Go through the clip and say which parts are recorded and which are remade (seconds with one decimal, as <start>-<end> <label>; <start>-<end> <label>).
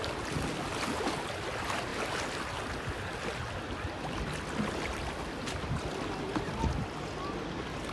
0.0-7.9 recorded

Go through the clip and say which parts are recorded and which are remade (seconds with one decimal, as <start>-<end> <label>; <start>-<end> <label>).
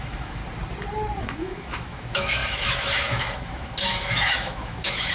0.0-0.4 remade; 0.4-1.2 recorded; 1.2-5.1 remade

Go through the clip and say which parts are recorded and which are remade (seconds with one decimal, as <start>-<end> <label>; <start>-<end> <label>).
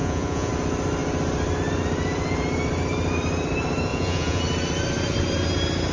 0.0-0.5 remade; 0.5-3.9 recorded; 3.9-4.4 remade; 4.4-5.9 recorded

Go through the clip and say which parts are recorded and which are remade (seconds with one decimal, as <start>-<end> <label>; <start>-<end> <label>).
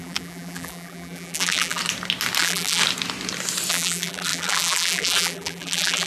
0.0-1.8 remade; 1.8-2.4 recorded; 2.4-2.8 remade; 2.8-3.7 recorded; 3.7-6.1 remade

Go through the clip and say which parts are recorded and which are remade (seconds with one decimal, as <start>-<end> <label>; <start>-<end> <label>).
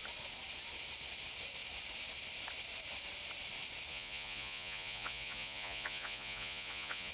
0.0-3.9 recorded; 3.9-7.1 remade